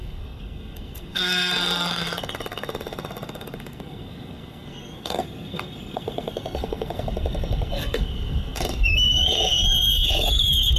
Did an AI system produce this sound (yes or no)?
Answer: yes